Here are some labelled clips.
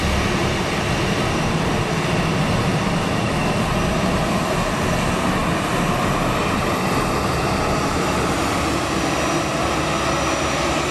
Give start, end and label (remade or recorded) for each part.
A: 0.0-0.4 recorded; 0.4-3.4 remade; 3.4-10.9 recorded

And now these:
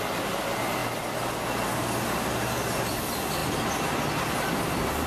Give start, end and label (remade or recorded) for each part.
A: 0.0-3.4 recorded; 3.4-4.5 remade; 4.5-5.1 recorded

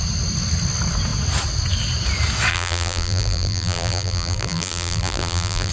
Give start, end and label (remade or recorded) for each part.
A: 0.0-2.5 recorded; 2.5-5.7 remade

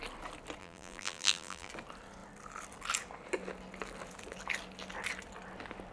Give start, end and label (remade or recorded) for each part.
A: 0.0-0.6 recorded; 0.6-1.7 remade; 1.7-5.9 recorded

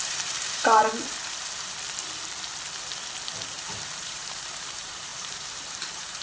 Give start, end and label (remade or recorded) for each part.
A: 0.0-0.8 remade; 0.8-3.7 recorded; 3.7-6.2 remade

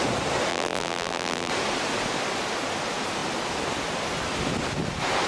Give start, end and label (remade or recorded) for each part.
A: 0.0-0.5 recorded; 0.5-1.5 remade; 1.5-5.3 recorded

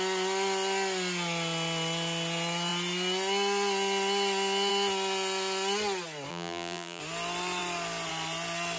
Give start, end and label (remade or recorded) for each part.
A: 0.0-6.3 recorded; 6.3-7.0 remade; 7.0-8.8 recorded